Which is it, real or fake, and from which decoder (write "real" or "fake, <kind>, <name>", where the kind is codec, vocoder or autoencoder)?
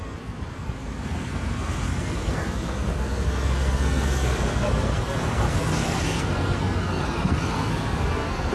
fake, codec, SNAC